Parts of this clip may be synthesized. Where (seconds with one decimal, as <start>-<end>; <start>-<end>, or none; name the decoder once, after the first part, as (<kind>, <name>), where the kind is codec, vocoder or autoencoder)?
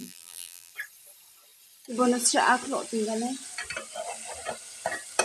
0.0-0.7 (vocoder, BigVGAN v2)